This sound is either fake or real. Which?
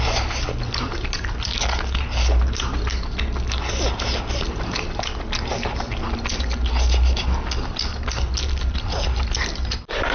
real